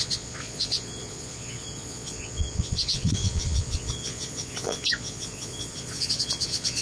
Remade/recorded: remade